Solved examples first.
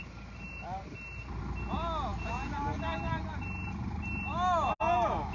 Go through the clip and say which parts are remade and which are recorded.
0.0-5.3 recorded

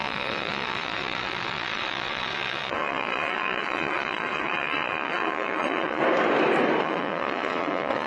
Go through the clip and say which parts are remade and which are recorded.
0.0-6.0 remade; 6.0-6.8 recorded; 6.8-8.1 remade